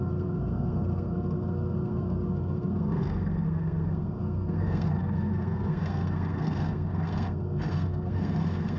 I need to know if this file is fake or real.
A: fake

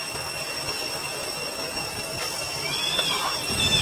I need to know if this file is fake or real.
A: real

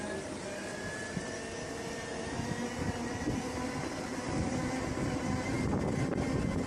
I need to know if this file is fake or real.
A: real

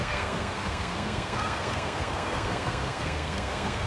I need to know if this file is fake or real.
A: fake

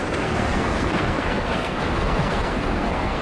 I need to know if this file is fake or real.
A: fake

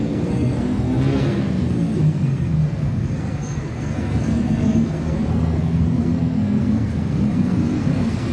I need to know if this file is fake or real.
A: fake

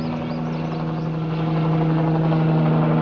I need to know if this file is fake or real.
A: real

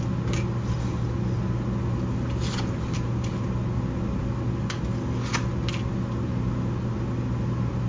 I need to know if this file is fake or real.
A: real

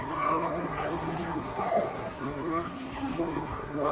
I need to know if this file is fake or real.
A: fake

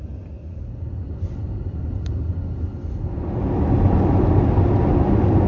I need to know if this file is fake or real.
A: real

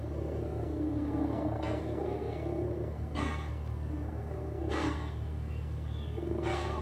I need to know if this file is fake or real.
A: fake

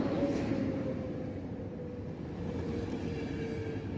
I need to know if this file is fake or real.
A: real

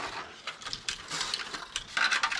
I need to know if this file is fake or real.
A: real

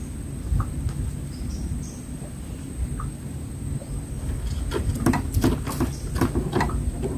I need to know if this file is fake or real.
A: real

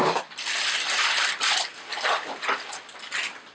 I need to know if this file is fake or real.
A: real